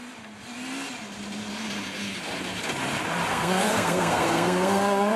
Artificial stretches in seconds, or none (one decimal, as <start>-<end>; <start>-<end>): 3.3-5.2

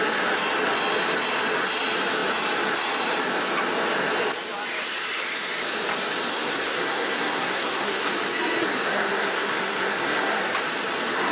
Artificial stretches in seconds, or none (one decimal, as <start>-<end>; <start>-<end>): 6.3-8.1; 8.6-10.4

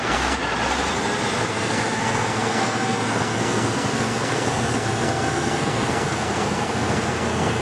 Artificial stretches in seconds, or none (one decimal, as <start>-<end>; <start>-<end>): 0.0-0.4; 1.5-7.6